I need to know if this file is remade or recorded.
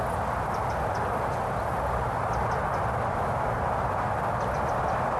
recorded